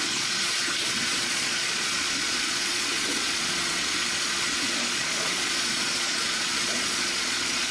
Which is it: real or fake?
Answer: fake